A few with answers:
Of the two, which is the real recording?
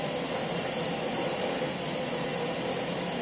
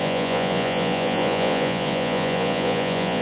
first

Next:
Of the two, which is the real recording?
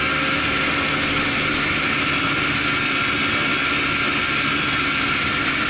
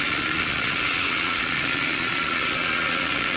first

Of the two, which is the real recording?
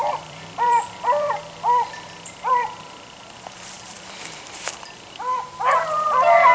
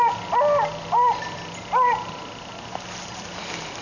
second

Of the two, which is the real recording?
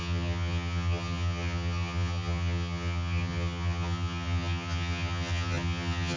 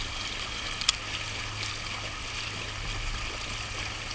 second